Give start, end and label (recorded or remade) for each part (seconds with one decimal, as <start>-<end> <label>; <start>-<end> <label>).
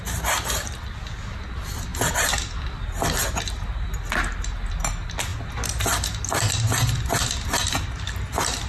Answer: 0.0-8.7 recorded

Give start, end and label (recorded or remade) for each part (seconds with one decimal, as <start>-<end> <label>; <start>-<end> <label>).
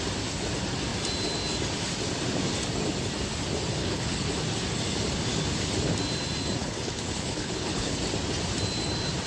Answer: 0.0-3.8 recorded; 3.8-4.3 remade; 4.3-6.6 recorded; 6.6-8.0 remade; 8.0-9.3 recorded